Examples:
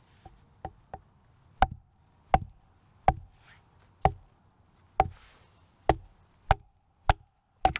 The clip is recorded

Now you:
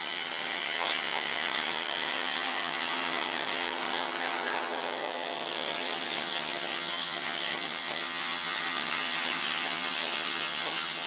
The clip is remade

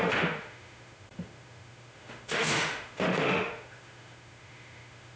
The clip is remade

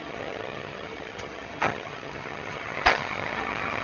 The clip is remade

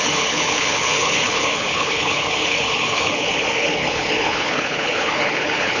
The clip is remade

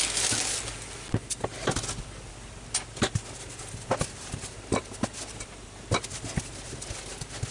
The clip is recorded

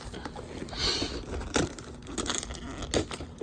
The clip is recorded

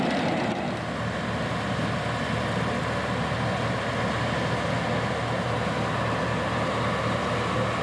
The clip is recorded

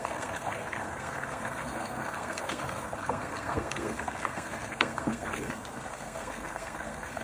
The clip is remade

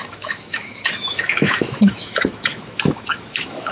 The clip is remade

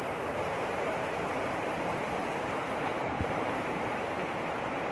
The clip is remade